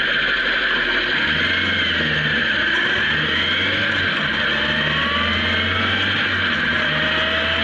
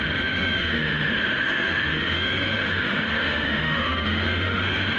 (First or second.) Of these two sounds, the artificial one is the second